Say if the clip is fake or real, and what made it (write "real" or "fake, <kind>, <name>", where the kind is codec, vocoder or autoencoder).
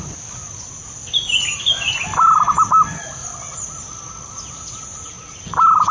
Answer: real